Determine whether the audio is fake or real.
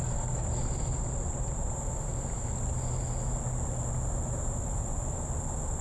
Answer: real